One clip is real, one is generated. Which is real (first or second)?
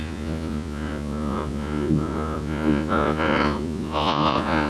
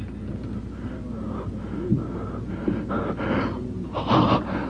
second